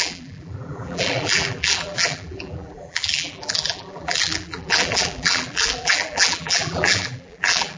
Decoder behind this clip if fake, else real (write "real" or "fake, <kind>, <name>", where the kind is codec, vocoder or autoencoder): fake, vocoder, BigVGAN v2